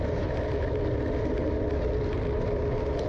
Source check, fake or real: real